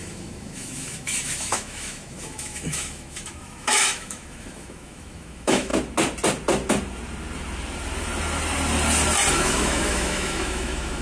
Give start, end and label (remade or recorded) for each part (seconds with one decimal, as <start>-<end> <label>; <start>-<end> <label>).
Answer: 0.0-5.7 remade; 5.7-9.3 recorded; 9.3-11.0 remade

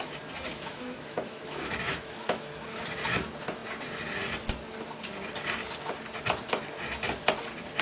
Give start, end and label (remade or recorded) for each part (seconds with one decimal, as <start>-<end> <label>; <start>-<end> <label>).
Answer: 0.0-0.5 recorded; 0.5-2.9 remade; 2.9-7.8 recorded

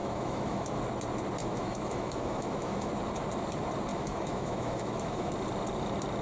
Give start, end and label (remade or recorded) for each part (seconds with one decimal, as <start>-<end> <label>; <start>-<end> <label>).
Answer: 0.0-0.8 remade; 0.8-1.4 recorded; 1.4-2.9 remade; 2.9-3.9 recorded; 3.9-5.3 remade; 5.3-6.2 recorded

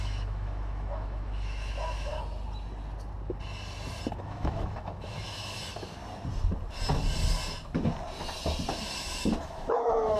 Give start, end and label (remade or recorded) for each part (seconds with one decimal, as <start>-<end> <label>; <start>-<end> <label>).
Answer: 0.0-2.1 remade; 2.1-4.2 recorded; 4.2-6.0 remade; 6.0-9.4 recorded; 9.4-10.2 remade